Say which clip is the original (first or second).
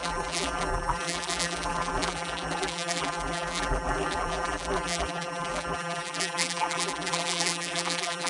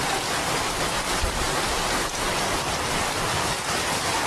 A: second